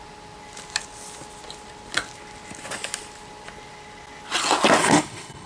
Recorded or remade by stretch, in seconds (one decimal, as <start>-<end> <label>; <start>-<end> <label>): 0.0-4.8 recorded; 4.8-5.5 remade